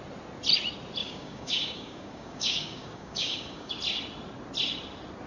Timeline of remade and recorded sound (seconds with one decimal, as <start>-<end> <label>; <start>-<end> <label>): 0.0-1.0 recorded; 1.0-3.7 remade; 3.7-5.3 recorded